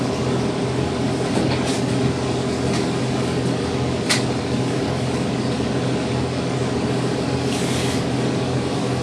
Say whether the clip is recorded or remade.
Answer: remade